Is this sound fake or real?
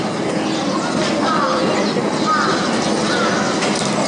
real